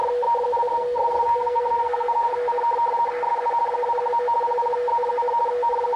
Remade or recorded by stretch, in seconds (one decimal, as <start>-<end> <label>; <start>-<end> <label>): 0.0-0.7 recorded; 0.7-2.3 remade; 2.3-6.0 recorded